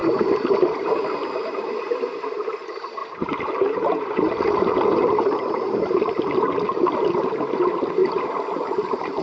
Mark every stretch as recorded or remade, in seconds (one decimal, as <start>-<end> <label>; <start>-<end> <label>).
0.0-1.7 remade; 1.7-3.0 recorded; 3.0-7.1 remade; 7.1-8.0 recorded; 8.0-9.2 remade